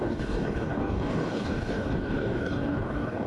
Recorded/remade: remade